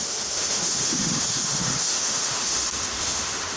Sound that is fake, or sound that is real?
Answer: fake